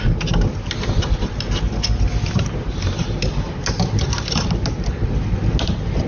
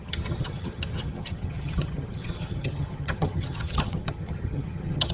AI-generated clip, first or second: second